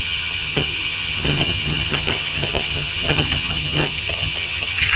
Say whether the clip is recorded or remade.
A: remade